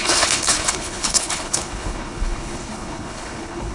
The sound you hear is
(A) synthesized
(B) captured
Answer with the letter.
A